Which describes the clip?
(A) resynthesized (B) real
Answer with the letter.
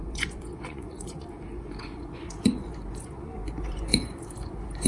A